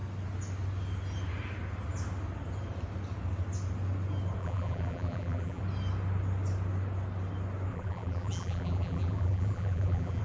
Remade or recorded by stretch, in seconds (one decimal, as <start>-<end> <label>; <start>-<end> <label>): 0.0-4.4 recorded; 4.4-5.6 remade; 5.6-7.7 recorded; 7.7-10.2 remade